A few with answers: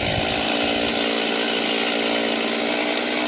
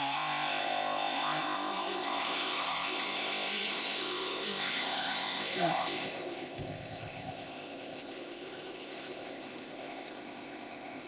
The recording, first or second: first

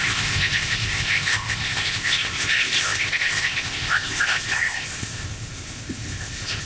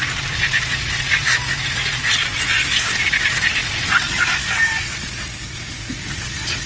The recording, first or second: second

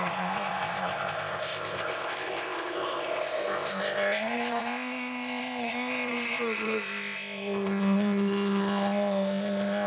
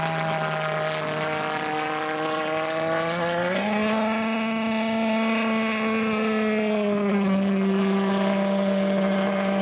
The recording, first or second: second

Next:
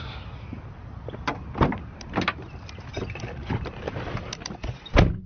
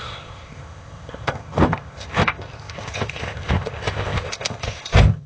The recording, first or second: first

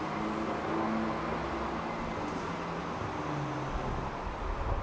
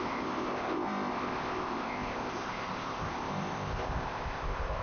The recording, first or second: first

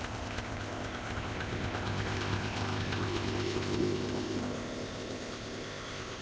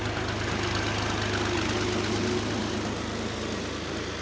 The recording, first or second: second